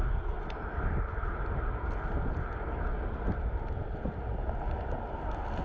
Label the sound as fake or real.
real